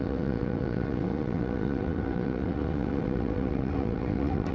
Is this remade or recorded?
remade